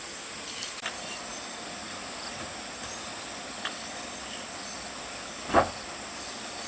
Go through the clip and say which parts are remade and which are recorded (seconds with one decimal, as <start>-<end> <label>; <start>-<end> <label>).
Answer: 0.0-6.7 recorded